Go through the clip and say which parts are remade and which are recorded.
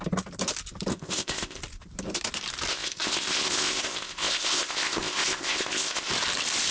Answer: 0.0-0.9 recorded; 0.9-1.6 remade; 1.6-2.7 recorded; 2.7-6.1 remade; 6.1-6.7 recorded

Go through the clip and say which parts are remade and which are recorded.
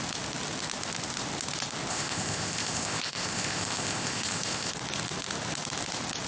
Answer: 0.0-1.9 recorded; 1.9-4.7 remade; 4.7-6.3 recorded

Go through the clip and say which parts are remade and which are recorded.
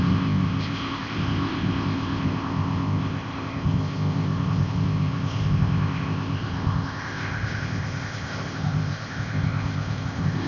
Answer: 0.0-10.5 remade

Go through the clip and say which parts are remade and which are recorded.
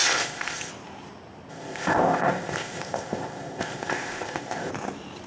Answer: 0.0-0.7 remade; 0.7-1.5 recorded; 1.5-4.7 remade; 4.7-5.3 recorded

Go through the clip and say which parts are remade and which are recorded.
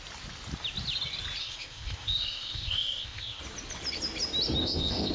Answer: 0.0-1.4 recorded; 1.4-3.4 remade; 3.4-4.6 recorded; 4.6-5.1 remade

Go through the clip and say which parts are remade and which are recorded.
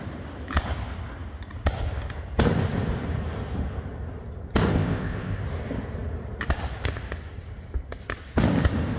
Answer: 0.0-4.7 recorded; 4.7-5.4 remade; 5.4-9.0 recorded